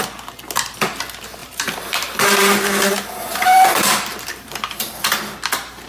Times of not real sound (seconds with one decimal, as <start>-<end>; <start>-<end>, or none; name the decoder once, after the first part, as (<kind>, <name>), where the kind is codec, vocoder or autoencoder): 1.4-4.9 (vocoder, BigVGAN v2)